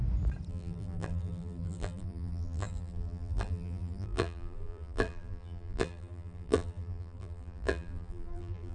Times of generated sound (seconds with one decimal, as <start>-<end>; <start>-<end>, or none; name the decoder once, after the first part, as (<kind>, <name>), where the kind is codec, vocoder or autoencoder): 0.5-8.7 (vocoder, BigVGAN v2)